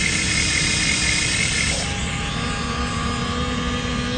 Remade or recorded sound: recorded